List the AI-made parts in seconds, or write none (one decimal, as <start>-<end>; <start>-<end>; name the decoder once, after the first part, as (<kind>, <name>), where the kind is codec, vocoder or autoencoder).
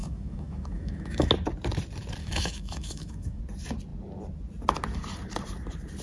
0.0-1.3 (autoencoder, DAC-VAE); 2.2-3.4